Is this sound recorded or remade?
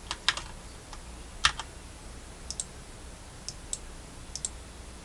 recorded